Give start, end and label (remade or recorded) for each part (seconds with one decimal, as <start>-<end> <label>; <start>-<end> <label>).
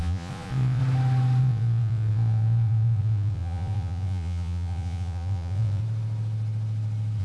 0.0-0.8 remade; 0.8-1.4 recorded; 1.4-5.8 remade; 5.8-7.2 recorded